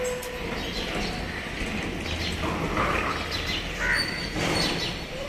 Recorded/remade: recorded